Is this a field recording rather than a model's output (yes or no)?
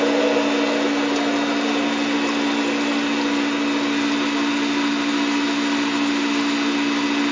yes